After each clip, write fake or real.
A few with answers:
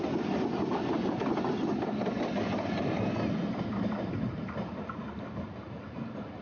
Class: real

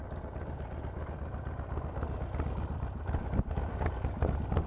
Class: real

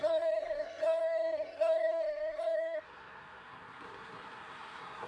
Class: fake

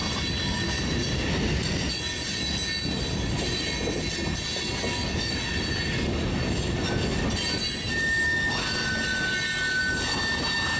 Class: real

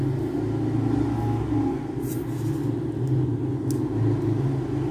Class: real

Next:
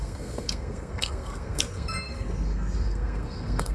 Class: fake